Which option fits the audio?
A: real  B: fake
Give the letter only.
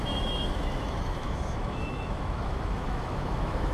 B